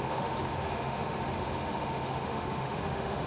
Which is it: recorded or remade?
remade